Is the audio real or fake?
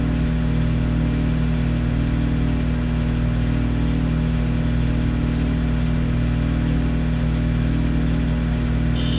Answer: real